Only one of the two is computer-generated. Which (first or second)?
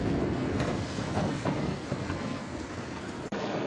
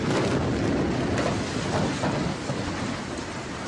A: first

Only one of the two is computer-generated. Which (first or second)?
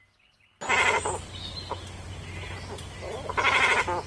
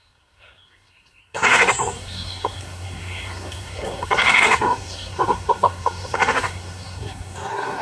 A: second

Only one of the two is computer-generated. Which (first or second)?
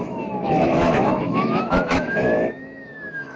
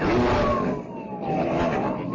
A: first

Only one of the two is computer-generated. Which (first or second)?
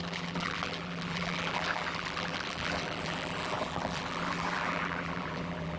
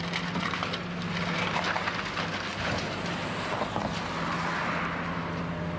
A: first